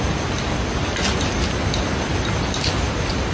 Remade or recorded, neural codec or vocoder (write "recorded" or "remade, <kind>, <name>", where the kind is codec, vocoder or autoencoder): recorded